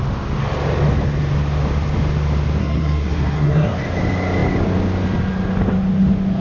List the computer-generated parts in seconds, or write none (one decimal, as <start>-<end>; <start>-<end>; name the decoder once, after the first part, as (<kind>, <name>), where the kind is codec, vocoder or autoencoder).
2.6-3.8 (codec, SNAC)